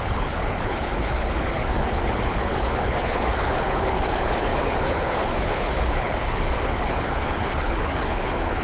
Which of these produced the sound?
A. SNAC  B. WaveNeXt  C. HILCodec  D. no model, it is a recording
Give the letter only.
C